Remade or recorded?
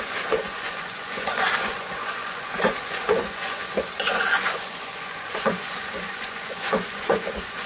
remade